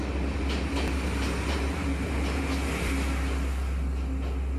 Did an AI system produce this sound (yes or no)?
no